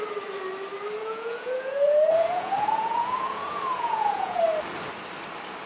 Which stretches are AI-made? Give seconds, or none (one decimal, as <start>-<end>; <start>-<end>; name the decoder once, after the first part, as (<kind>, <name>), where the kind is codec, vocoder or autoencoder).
1.0-4.4 (vocoder, Vocos)